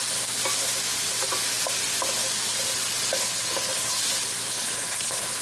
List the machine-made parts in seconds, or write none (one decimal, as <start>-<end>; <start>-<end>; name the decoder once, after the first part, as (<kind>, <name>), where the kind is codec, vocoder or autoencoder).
3.2-4.0 (codec, HILCodec); 4.5-5.4